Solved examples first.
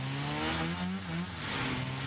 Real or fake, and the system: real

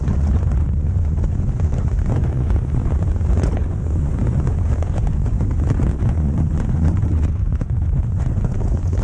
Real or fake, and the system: fake, vocoder, Vocos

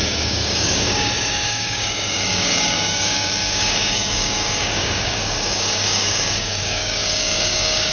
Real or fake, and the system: fake, codec, DAC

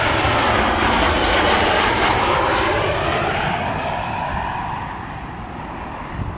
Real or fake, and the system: fake, vocoder, BigVGAN v2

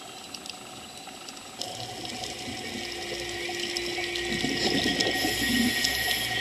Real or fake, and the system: real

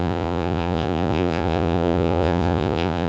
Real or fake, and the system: fake, vocoder, Vocos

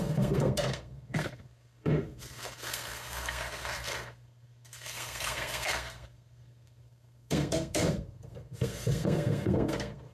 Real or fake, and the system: fake, codec, SNAC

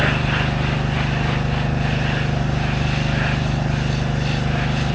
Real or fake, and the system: real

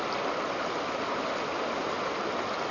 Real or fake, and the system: real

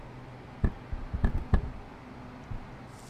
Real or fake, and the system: real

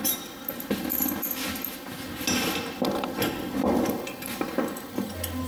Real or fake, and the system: real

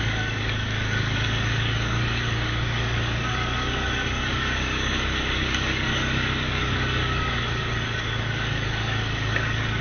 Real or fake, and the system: fake, codec, DAC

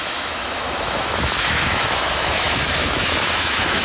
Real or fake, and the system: fake, autoencoder, DAC-VAE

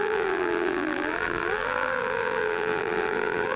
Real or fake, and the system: fake, vocoder, BigVGAN v2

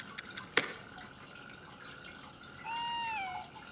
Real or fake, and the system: real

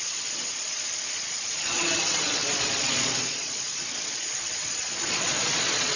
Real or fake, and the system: fake, vocoder, Vocos